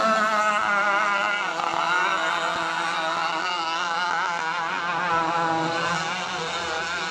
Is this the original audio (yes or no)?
yes